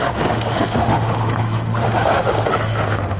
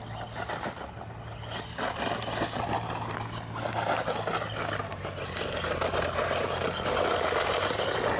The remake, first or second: first